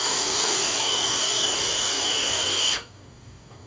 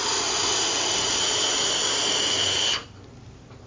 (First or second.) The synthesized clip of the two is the first